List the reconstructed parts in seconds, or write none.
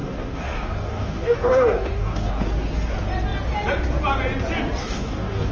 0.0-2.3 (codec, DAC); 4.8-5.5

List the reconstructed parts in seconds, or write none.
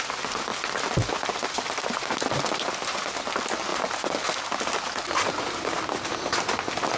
none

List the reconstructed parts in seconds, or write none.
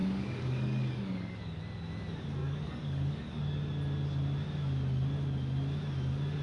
0.0-1.6 (codec, DAC); 2.4-3.6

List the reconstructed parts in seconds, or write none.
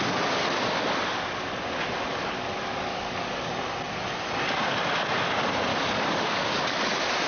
2.1-3.5 (codec, DAC); 5.7-6.6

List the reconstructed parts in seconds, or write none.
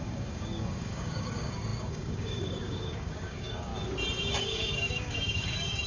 0.0-3.7 (codec, DAC); 4.2-5.9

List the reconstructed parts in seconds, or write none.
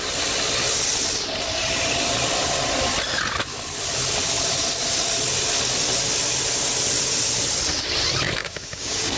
8.4-9.2 (codec, DAC)